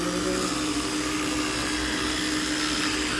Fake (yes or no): no